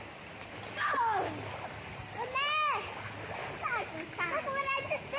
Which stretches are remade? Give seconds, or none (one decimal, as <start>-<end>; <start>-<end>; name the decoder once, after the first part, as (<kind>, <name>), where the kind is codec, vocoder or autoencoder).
none

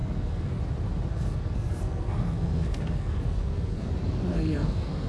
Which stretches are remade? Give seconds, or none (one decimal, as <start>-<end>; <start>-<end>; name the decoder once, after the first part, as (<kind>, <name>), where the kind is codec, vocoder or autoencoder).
0.0-0.6 (codec, SNAC); 1.1-3.9; 4.3-5.1

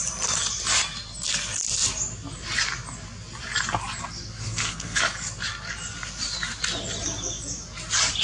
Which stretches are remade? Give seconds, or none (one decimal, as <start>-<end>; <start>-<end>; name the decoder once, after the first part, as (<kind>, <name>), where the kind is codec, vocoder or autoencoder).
4.4-5.0 (codec, SNAC)

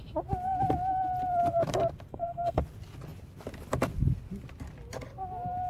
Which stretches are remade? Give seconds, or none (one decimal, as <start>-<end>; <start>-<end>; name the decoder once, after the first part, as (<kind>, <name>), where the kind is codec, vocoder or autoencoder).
2.1-2.6 (codec, SNAC)

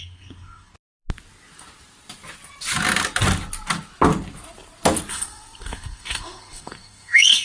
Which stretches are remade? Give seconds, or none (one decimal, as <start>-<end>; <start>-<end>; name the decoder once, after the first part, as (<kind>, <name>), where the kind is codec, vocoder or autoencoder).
0.0-0.7 (codec, SNAC); 5.1-7.4

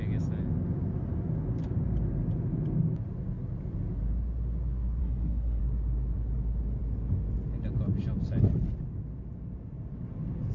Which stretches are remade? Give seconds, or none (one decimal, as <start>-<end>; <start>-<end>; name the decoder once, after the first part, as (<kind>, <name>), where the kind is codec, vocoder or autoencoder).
5.0-5.6 (codec, SNAC)

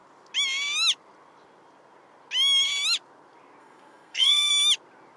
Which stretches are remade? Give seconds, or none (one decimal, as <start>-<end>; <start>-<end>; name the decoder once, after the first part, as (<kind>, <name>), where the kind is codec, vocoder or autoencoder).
3.6-4.5 (codec, SNAC)